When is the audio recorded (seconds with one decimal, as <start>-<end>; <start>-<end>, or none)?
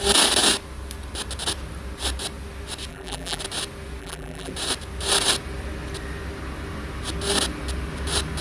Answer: 0.0-2.9; 3.4-4.0; 4.5-8.4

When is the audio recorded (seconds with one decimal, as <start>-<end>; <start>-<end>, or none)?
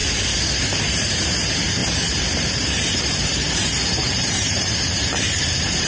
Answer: 0.0-0.5